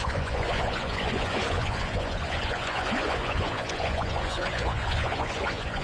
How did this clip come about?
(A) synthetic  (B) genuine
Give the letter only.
A